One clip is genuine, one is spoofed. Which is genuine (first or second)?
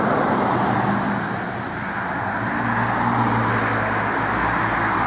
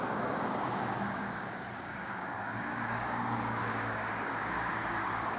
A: first